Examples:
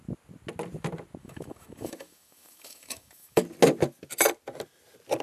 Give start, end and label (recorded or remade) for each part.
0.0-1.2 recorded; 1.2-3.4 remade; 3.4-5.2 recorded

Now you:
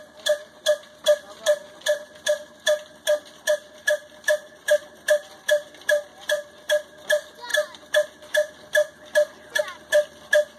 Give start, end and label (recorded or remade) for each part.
0.0-10.6 recorded